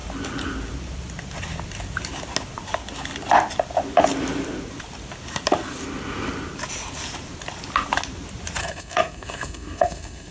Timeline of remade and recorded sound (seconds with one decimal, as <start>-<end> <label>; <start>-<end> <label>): 0.0-8.6 recorded; 8.6-10.3 remade